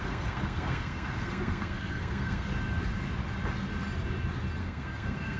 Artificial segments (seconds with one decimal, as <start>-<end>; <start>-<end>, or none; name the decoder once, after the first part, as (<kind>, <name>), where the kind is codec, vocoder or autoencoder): 0.0-2.5 (codec, SNAC); 4.6-5.4

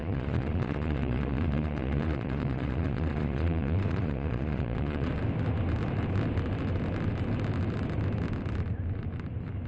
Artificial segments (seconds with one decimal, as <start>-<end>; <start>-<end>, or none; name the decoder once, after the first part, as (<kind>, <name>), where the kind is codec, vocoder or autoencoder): 0.0-5.1 (vocoder, Vocos)

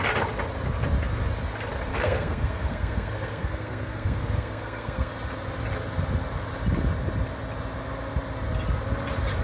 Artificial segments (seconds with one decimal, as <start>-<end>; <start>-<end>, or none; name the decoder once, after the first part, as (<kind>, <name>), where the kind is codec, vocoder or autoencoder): 1.9-5.1 (codec, SNAC)

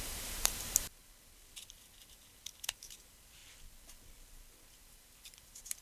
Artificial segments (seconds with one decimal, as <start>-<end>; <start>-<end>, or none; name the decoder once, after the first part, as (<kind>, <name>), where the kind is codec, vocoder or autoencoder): 0.0-1.0 (vocoder, BigVGAN v2); 2.6-3.4; 4.8-5.8

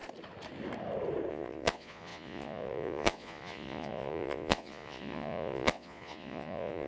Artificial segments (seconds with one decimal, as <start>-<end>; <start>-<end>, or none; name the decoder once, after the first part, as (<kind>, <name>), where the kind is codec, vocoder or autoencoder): 1.3-6.9 (vocoder, Vocos)

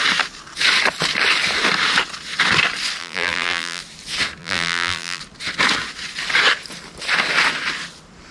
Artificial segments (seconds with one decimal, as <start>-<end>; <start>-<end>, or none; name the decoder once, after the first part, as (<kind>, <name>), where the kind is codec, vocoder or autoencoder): 3.0-3.8 (vocoder, BigVGAN v2); 4.4-5.2

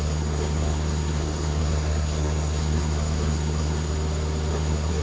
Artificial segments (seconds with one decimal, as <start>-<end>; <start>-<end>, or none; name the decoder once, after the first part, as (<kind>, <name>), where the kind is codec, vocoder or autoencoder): 0.0-3.9 (codec, SNAC); 4.5-5.0

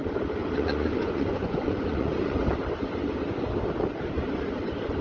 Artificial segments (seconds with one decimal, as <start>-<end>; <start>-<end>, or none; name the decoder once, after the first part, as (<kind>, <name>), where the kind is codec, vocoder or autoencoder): 0.4-2.4 (vocoder, Vocos)